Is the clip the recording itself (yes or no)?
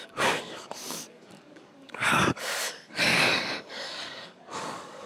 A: no